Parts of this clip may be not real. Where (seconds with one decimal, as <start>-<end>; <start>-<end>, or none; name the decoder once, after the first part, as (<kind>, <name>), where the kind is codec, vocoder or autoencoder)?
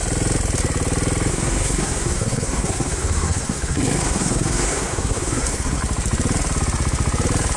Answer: 1.3-5.8 (codec, SNAC)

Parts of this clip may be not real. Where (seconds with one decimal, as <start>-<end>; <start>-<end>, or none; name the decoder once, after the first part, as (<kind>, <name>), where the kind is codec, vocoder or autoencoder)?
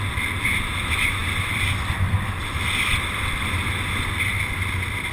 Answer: none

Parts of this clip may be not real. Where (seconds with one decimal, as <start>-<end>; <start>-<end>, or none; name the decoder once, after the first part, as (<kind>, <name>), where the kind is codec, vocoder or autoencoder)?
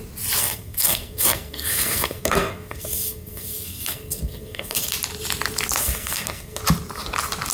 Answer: 0.4-4.9 (codec, SNAC); 5.8-6.6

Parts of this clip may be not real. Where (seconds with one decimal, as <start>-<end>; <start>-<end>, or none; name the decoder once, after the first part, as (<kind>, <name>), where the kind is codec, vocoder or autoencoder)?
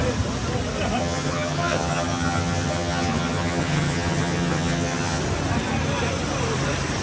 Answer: 1.0-5.2 (vocoder, HiFi-GAN)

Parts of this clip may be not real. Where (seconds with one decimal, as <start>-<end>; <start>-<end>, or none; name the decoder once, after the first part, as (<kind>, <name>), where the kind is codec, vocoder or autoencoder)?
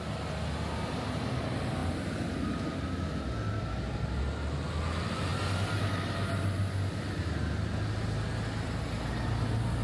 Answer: none